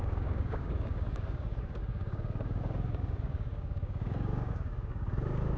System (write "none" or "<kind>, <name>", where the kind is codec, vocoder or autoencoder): codec, DAC